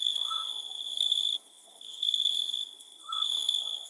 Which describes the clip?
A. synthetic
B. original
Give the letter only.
A